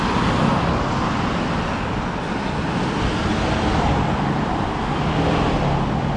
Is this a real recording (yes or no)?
yes